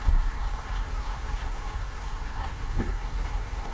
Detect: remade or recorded remade